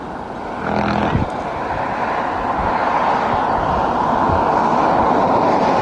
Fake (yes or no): no